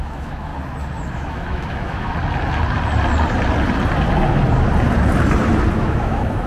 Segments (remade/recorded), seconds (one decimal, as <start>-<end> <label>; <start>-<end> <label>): 0.0-0.5 remade; 0.5-1.1 recorded; 1.1-2.1 remade; 2.1-5.7 recorded; 5.7-6.5 remade